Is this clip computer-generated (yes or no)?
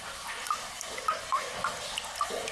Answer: no